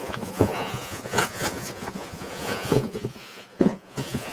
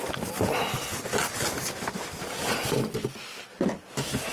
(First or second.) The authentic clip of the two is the second